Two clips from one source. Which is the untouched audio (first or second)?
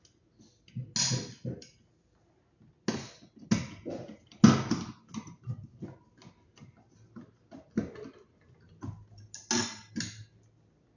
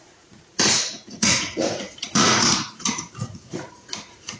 first